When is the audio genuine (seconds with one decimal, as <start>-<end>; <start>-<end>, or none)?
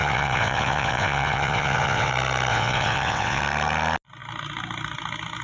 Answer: 2.1-2.5; 3.4-5.4